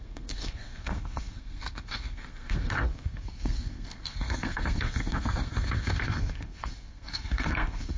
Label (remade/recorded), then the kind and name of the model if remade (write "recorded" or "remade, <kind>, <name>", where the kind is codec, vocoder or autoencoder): remade, codec, SNAC